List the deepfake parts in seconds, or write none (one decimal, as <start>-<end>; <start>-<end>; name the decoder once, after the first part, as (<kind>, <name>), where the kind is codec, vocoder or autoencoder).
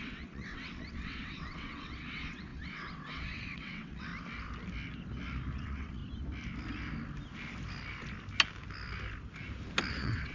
0.0-4.1 (vocoder, WaveNeXt); 5.5-6.0; 9.9-10.3